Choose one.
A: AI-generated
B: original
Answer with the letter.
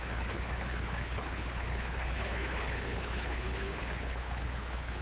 A